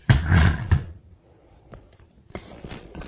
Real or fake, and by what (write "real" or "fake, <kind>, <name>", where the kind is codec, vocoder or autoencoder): fake, vocoder, Vocos